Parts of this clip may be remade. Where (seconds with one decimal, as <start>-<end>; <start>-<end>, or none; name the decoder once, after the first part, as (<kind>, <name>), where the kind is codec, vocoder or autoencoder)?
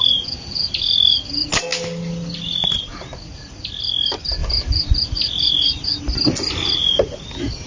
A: none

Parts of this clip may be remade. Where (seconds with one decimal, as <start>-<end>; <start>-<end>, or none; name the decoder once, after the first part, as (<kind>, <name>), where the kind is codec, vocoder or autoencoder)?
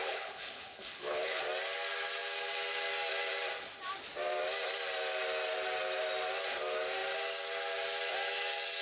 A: 0.0-1.4 (codec, HILCodec)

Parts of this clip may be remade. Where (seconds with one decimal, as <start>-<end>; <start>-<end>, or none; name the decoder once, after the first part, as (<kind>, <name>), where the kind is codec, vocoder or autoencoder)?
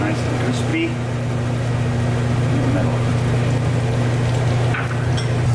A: none